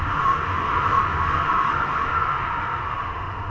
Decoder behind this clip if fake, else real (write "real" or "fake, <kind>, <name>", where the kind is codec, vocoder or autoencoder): fake, autoencoder, DAC-VAE